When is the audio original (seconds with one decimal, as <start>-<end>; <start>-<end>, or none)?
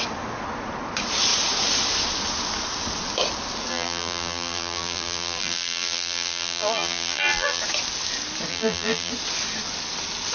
0.0-3.7; 7.6-8.5; 9.1-10.3